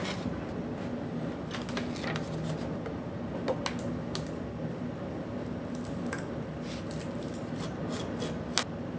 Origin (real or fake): real